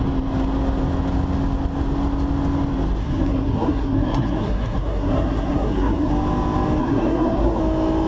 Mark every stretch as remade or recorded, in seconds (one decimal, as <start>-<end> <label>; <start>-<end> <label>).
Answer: 0.0-3.0 recorded; 3.0-6.1 remade; 6.1-6.8 recorded; 6.8-7.6 remade; 7.6-8.1 recorded